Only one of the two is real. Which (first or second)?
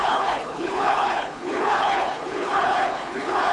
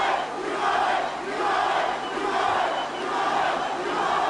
second